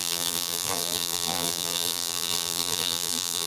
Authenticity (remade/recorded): remade